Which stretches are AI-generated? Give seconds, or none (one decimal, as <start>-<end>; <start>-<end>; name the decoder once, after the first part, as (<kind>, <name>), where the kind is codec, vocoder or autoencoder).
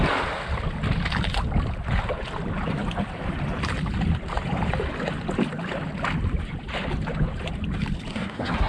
8.1-8.7 (codec, SNAC)